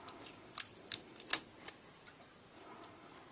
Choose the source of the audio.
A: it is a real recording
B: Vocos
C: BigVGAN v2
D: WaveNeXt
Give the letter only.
A